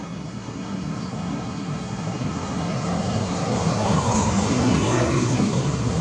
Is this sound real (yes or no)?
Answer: no